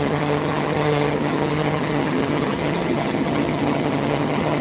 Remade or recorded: remade